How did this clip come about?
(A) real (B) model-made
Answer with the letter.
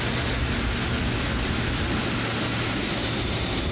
A